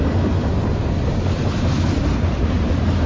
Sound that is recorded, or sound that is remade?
recorded